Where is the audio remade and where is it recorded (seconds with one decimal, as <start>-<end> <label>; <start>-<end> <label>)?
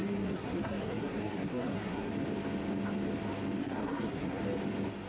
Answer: 0.0-2.1 remade; 2.1-3.6 recorded; 3.6-4.4 remade; 4.4-5.1 recorded